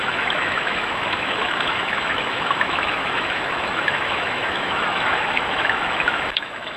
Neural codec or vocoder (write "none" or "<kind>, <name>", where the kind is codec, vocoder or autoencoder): autoencoder, DAC-VAE